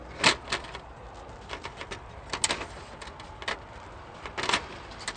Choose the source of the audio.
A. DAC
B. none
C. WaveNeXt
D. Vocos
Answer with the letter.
B